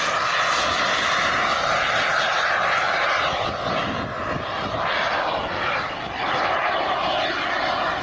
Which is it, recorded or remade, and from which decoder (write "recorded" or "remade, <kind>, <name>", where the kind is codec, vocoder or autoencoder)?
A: recorded